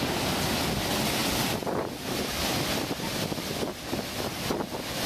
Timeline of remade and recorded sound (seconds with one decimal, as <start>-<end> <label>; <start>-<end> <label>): 0.0-5.1 recorded

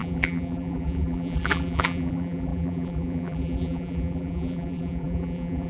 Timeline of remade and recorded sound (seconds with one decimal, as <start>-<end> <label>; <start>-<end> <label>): 0.0-5.7 remade

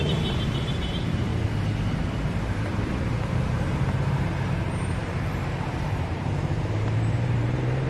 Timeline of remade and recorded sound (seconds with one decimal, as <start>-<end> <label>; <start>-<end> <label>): 0.0-1.3 remade; 1.3-1.9 recorded; 1.9-7.9 remade

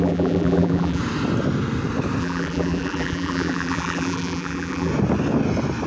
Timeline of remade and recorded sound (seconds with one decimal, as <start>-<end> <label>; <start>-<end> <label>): 0.0-1.0 remade; 1.0-2.2 recorded; 2.2-4.9 remade; 4.9-5.9 recorded